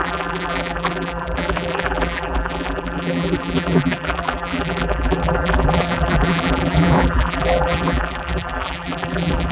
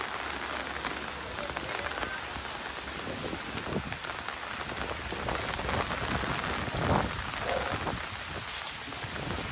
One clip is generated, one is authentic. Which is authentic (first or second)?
second